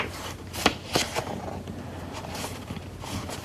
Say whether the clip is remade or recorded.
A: recorded